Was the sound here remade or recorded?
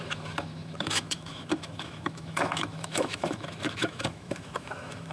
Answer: remade